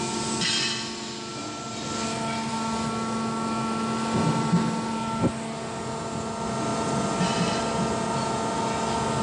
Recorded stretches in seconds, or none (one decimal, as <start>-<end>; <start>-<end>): 0.0-9.2

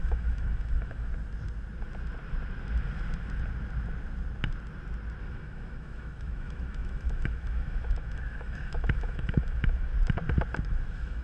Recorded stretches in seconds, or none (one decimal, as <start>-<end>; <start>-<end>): 1.1-5.2; 9.9-10.6

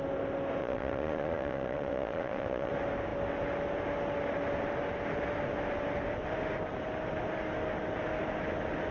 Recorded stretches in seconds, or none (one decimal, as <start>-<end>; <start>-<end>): 0.0-0.6; 2.7-8.9